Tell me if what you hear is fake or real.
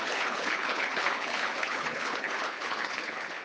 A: fake